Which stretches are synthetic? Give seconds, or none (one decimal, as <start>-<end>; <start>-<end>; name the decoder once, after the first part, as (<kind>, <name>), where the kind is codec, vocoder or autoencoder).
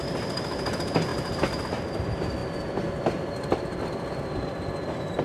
none